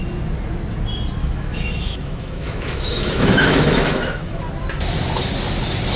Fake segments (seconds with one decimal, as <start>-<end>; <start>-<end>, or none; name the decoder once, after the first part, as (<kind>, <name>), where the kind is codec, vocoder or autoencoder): 1.2-4.4 (autoencoder, DAC-VAE)